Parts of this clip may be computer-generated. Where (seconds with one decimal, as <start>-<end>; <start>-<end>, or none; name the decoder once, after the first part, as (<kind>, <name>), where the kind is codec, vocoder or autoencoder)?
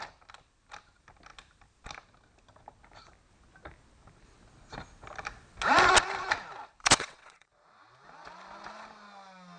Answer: 6.8-7.5 (vocoder, WaveNeXt)